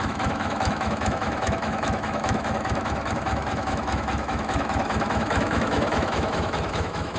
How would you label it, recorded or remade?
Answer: remade